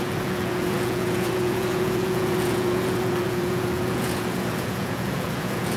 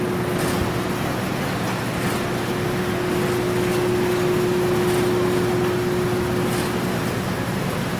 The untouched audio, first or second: second